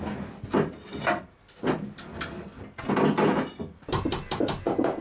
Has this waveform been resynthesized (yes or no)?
no